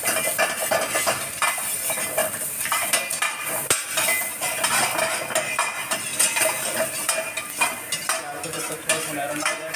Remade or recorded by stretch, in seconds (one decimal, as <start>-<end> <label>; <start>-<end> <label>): 0.0-2.2 recorded; 2.2-3.3 remade; 3.3-4.3 recorded; 4.3-5.1 remade; 5.1-9.8 recorded